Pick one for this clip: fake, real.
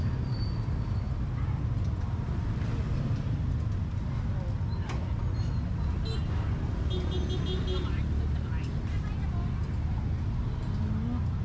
real